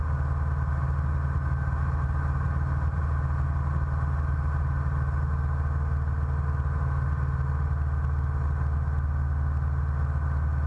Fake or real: real